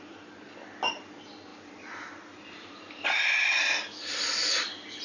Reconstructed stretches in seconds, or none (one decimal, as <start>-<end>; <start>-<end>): 1.5-4.5